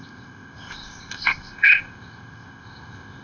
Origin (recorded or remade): remade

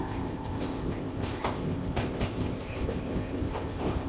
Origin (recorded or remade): remade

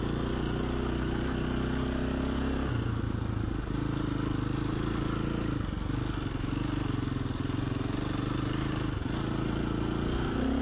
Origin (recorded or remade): recorded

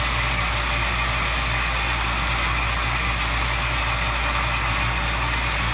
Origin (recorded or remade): recorded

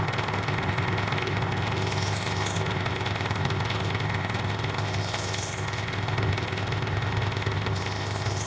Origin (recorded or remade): remade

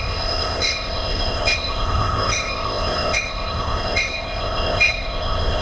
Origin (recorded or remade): remade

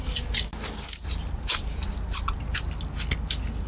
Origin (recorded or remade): recorded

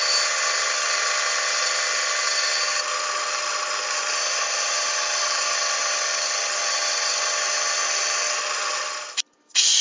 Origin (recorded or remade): recorded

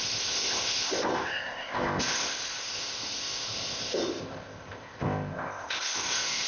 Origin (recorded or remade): remade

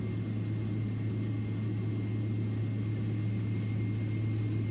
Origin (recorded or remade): recorded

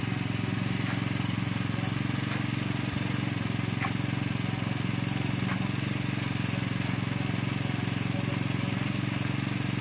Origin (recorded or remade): recorded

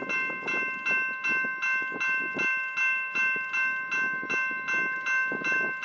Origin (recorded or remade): recorded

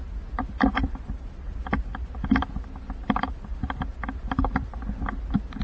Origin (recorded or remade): recorded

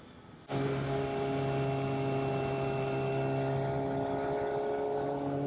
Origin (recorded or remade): recorded